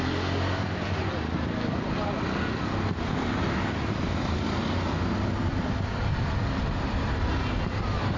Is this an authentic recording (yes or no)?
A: yes